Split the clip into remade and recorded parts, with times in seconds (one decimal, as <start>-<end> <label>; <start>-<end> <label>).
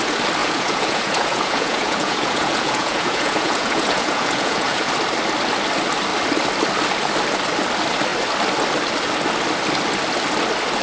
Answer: 0.0-0.4 recorded; 0.4-4.9 remade; 4.9-10.8 recorded